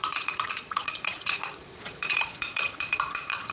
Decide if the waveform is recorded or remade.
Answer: remade